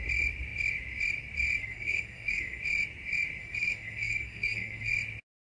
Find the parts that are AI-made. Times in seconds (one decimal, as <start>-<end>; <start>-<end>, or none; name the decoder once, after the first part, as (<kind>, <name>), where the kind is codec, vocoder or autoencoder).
1.6-2.6 (codec, SNAC); 3.4-4.9